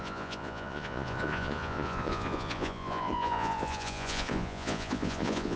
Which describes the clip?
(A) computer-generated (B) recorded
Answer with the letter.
A